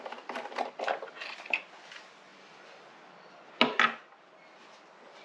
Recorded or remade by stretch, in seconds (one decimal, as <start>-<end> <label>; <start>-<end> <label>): 0.0-5.2 recorded